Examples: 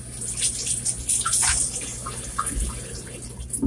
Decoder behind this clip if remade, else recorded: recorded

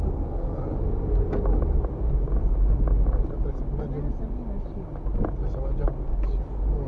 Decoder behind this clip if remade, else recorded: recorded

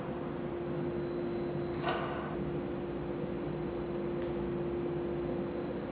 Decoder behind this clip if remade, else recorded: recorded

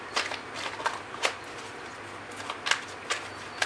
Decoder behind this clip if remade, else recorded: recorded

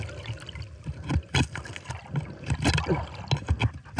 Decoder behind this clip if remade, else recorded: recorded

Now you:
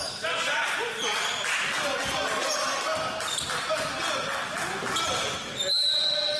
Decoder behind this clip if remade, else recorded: recorded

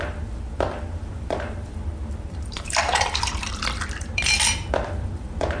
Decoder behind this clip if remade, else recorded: remade, vocoder, BigVGAN v2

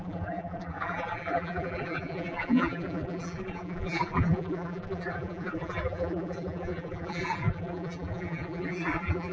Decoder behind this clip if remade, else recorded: remade, vocoder, BigVGAN v2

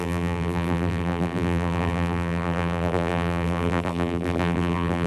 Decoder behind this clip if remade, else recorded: remade, vocoder, BigVGAN v2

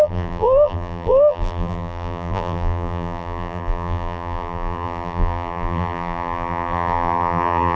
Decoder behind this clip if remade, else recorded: remade, vocoder, BigVGAN v2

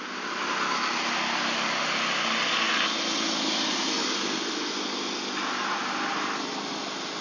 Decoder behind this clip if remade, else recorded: recorded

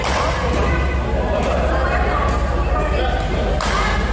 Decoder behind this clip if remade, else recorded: recorded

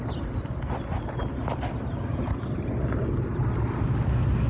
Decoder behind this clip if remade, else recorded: recorded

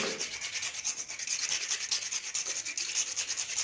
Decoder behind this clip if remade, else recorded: recorded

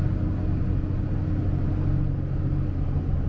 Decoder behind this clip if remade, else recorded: recorded